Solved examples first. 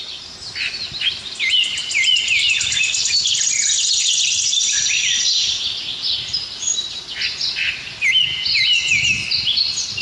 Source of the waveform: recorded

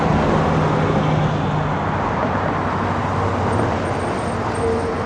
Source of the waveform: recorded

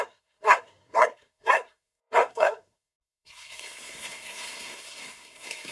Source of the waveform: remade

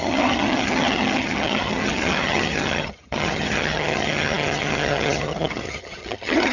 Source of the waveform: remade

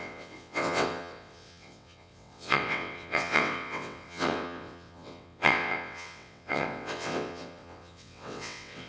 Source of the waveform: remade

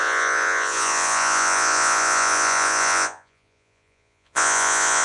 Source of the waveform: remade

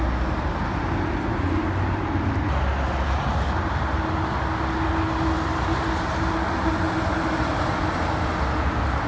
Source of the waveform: recorded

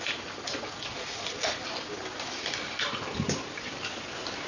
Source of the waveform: recorded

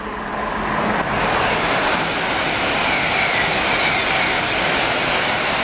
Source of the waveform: recorded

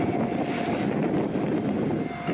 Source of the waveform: recorded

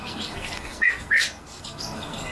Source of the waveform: remade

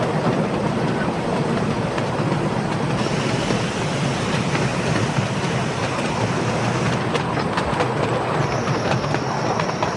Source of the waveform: recorded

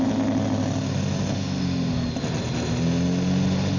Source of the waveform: recorded